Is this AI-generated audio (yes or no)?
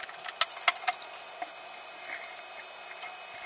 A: no